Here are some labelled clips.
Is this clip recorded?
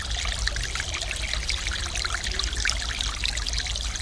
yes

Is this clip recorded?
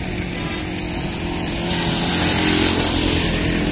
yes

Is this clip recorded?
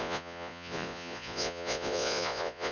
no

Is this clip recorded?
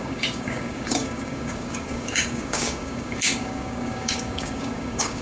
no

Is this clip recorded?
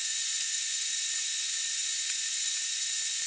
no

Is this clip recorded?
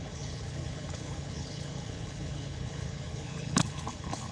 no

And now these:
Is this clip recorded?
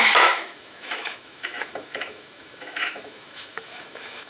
no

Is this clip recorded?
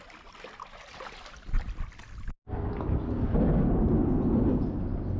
yes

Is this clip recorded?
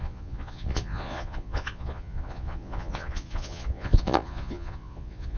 no